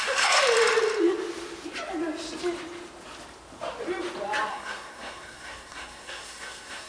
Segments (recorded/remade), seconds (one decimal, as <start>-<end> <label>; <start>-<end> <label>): 0.0-0.4 remade; 0.4-4.5 recorded; 4.5-6.9 remade